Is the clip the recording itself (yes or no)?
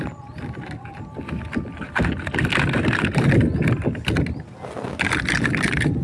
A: yes